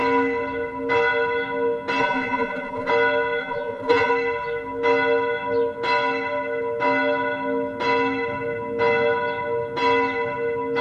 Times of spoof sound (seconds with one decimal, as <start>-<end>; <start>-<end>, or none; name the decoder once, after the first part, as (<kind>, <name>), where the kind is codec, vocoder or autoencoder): 2.0-2.9 (vocoder, Vocos); 3.4-4.1